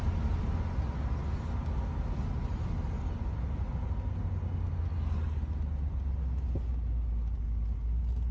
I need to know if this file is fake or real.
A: real